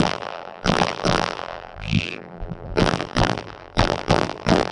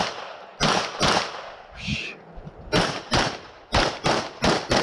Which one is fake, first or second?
first